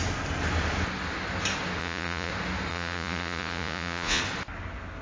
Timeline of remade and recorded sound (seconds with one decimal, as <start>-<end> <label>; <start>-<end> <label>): 0.0-1.8 recorded; 1.8-2.3 remade; 2.3-2.7 recorded; 2.7-4.2 remade; 4.2-5.0 recorded